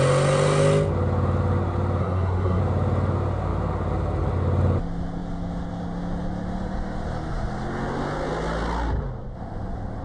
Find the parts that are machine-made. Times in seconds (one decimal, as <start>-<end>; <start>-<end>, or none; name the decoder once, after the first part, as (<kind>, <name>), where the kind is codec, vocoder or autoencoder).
2.0-2.6 (codec, SNAC)